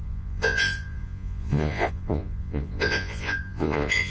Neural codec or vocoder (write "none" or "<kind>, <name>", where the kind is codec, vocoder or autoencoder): vocoder, Vocos